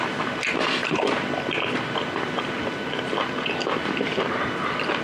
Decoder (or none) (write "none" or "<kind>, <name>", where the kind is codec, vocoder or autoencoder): none